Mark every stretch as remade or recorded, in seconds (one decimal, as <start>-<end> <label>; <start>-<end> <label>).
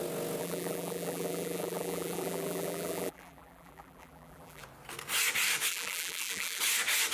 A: 0.0-0.4 recorded; 0.4-4.6 remade; 4.6-5.7 recorded; 5.7-6.6 remade; 6.6-7.1 recorded